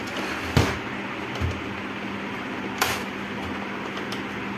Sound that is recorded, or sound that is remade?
recorded